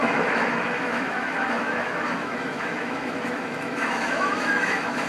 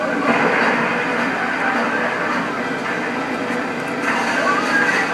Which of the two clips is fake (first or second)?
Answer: first